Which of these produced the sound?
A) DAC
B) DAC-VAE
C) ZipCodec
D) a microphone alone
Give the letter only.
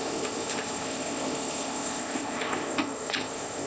C